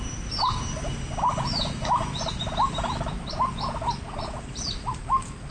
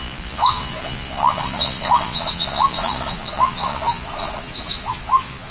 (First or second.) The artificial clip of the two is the second